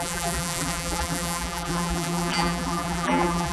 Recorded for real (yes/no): no